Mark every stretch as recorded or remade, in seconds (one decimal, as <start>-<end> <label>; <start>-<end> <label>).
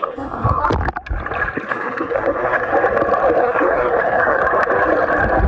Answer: 0.0-0.6 remade; 0.6-1.7 recorded; 1.7-2.7 remade; 2.7-3.4 recorded; 3.4-4.4 remade; 4.4-5.5 recorded